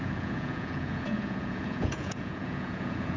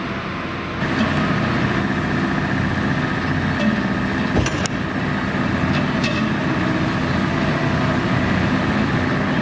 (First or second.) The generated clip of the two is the first